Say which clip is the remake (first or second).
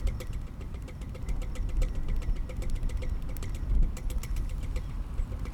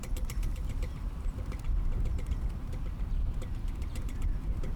second